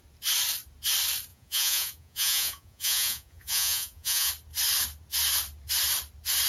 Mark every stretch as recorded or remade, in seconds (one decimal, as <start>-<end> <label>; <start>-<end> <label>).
0.0-1.3 recorded; 1.3-4.3 remade; 4.3-6.5 recorded